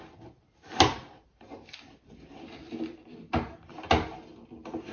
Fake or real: real